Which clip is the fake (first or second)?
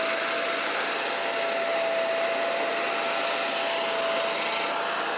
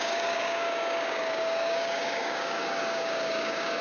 second